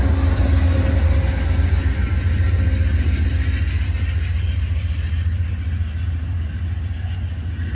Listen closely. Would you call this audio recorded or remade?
recorded